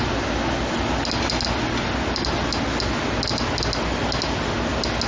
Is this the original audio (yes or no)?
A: yes